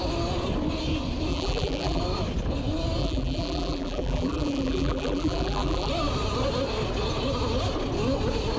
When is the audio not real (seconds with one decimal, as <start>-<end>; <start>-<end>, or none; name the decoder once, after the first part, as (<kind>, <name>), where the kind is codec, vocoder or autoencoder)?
1.3-2.0 (vocoder, BigVGAN v2); 3.0-5.9